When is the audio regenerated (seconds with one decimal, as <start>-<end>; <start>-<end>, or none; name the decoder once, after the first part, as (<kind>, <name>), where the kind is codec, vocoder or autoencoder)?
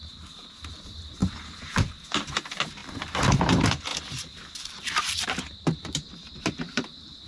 0.0-1.2 (vocoder, BigVGAN v2); 1.8-2.8; 3.4-7.3